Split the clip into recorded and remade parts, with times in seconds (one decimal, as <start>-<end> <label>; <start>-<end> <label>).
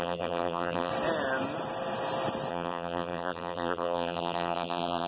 0.0-0.9 remade; 0.9-2.5 recorded; 2.5-5.1 remade